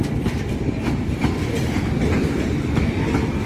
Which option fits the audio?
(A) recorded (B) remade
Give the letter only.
B